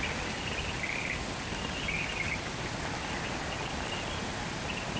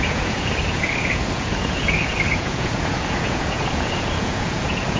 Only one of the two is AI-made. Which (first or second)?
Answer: second